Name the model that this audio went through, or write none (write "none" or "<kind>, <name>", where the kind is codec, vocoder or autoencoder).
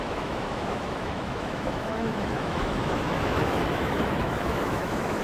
autoencoder, DAC-VAE